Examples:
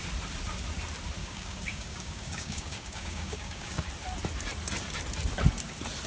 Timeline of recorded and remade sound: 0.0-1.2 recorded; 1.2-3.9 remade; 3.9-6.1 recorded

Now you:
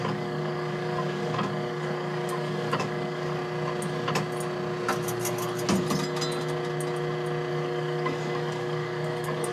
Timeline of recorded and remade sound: 0.0-3.4 remade; 3.4-7.5 recorded; 7.5-9.5 remade

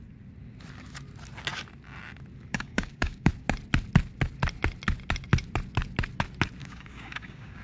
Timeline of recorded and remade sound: 0.0-2.5 recorded; 2.5-3.3 remade; 3.3-6.6 recorded; 6.6-7.6 remade

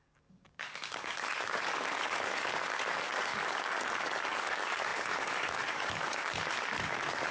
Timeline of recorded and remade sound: 0.0-7.3 remade

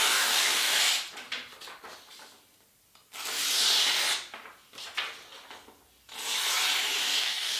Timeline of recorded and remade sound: 0.0-0.8 remade; 0.8-7.0 recorded; 7.0-7.6 remade

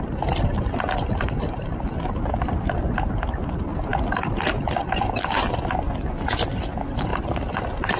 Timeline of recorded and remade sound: 0.0-8.0 recorded

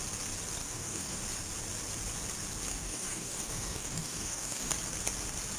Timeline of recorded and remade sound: 0.0-0.6 recorded; 0.6-1.2 remade; 1.2-2.7 recorded; 2.7-4.7 remade; 4.7-5.6 recorded